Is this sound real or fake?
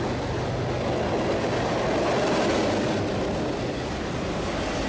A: real